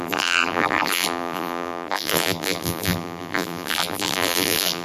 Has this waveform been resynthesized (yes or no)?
yes